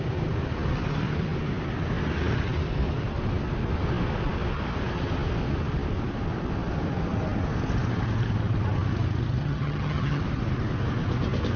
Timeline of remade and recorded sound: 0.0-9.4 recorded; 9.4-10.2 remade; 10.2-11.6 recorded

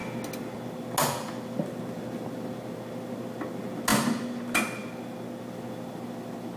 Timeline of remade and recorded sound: 0.0-6.6 recorded

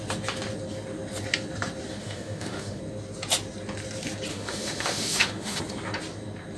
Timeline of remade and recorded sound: 0.0-2.0 recorded; 2.0-2.8 remade; 2.8-4.3 recorded; 4.3-5.6 remade; 5.6-6.6 recorded

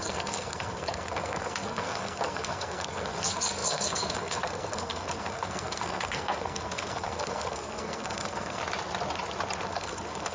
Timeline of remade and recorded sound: 0.0-8.6 remade; 8.6-9.7 recorded; 9.7-10.3 remade